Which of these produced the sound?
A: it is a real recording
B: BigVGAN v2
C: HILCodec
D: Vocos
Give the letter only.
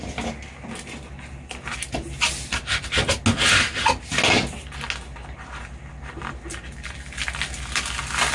A